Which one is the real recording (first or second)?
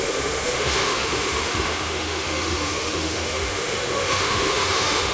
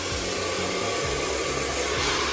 second